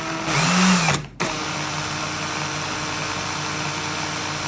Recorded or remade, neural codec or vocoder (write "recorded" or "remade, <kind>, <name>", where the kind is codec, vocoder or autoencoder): recorded